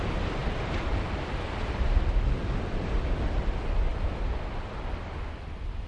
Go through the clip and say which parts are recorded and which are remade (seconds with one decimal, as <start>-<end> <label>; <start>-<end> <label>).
0.0-5.9 recorded